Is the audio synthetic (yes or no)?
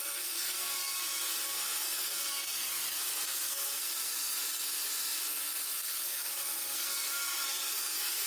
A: yes